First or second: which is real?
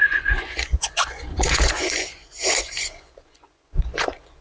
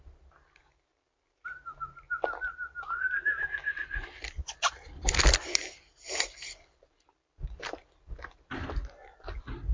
second